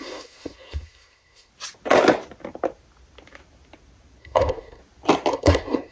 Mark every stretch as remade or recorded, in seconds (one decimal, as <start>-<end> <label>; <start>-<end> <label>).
0.0-1.5 remade; 1.5-4.2 recorded; 4.2-4.8 remade; 4.8-5.3 recorded; 5.3-5.9 remade